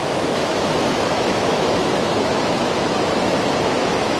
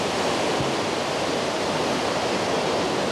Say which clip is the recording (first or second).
second